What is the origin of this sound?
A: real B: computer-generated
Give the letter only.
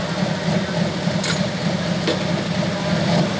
A